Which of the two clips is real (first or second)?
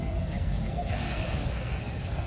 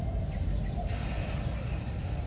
second